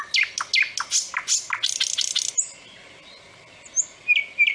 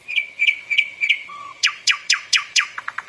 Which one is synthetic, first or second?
second